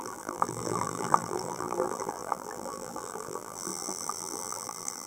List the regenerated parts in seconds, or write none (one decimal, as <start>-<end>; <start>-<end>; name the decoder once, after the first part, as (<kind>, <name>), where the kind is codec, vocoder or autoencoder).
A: 0.0-5.1 (vocoder, BigVGAN v2)